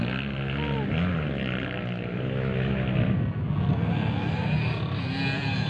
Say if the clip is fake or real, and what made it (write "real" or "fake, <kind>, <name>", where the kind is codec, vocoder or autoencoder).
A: real